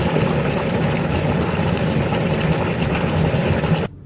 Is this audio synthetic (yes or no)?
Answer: no